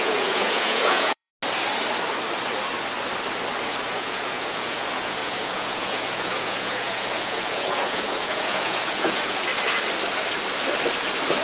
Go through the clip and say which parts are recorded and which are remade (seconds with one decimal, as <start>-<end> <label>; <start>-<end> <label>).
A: 0.0-1.3 remade; 1.3-3.9 recorded; 3.9-9.5 remade; 9.5-11.4 recorded